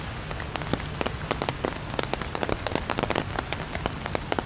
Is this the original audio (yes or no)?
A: yes